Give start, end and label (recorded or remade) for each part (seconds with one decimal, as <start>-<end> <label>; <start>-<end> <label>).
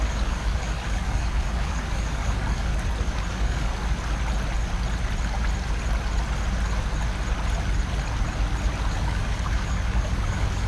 0.0-2.7 remade; 2.7-3.3 recorded; 3.3-3.7 remade; 3.7-8.9 recorded; 8.9-10.7 remade